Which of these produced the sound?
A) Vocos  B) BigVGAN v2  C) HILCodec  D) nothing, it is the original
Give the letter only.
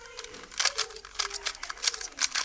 D